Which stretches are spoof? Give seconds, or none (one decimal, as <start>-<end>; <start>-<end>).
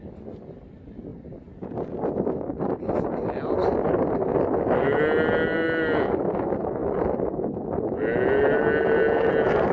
none